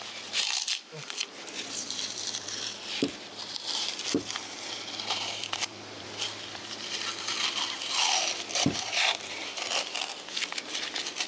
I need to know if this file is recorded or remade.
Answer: remade